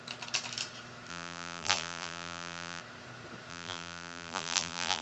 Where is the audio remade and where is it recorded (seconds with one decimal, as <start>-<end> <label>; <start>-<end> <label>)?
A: 0.0-1.1 recorded; 1.1-2.8 remade; 2.8-3.5 recorded; 3.5-5.0 remade